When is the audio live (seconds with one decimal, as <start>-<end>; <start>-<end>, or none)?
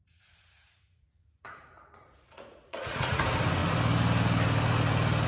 3.2-5.3